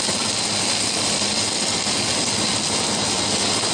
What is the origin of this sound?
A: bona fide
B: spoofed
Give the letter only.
A